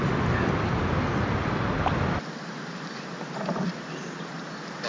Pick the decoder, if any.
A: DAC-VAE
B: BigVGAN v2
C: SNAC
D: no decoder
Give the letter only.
D